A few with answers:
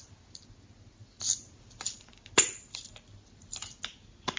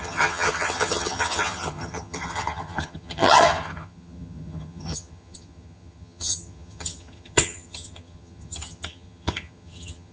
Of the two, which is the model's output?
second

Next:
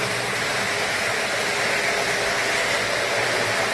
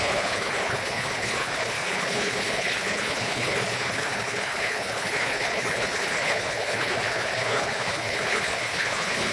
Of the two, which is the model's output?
second